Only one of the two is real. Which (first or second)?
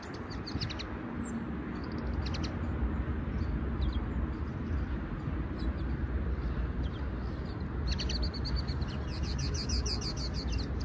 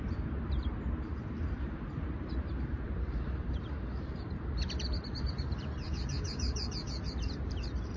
first